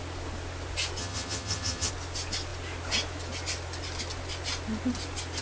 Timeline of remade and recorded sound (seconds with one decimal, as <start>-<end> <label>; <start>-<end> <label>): 0.0-1.0 recorded; 1.0-1.9 remade; 1.9-5.4 recorded